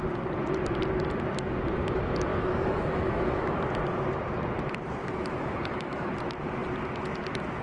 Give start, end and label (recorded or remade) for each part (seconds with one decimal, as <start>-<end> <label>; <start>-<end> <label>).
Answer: 0.0-2.3 recorded; 2.3-3.6 remade; 3.6-5.0 recorded; 5.0-6.1 remade; 6.1-7.6 recorded